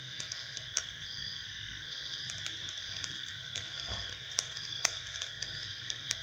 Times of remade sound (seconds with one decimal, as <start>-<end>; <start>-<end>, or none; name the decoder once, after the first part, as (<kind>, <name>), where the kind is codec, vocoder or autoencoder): 0.0-2.2 (codec, SNAC); 2.8-6.2